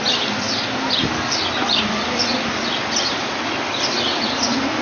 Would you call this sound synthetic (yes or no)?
yes